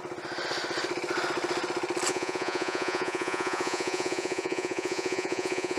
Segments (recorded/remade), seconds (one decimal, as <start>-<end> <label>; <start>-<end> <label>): 0.0-2.1 recorded; 2.1-5.8 remade